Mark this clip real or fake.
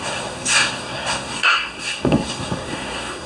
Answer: fake